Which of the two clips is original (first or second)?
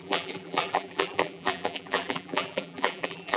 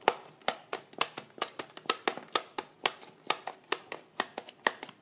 second